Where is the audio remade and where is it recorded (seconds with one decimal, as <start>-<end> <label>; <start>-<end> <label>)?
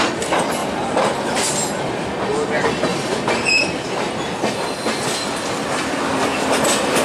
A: 0.0-0.6 recorded; 0.6-1.4 remade; 1.4-2.9 recorded; 2.9-4.1 remade; 4.1-7.0 recorded